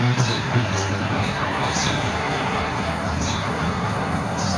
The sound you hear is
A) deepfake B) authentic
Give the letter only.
A